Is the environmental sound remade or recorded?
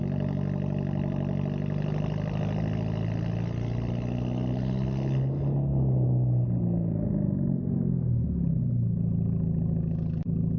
recorded